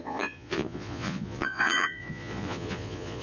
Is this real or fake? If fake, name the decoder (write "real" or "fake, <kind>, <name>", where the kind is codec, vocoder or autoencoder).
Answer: fake, vocoder, Vocos